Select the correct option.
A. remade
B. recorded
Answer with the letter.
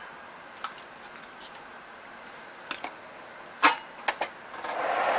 B